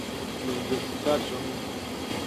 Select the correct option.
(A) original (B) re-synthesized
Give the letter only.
A